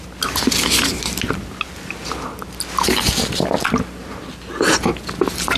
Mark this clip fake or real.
real